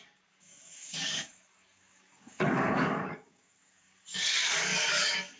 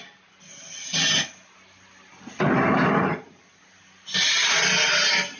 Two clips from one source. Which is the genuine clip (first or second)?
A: second